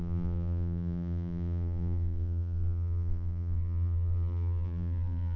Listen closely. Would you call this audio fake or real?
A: fake